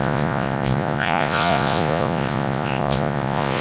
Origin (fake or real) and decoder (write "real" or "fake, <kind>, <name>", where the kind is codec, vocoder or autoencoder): fake, vocoder, Vocos